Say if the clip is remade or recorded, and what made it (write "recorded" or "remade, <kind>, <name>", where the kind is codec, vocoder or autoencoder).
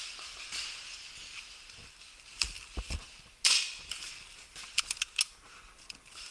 recorded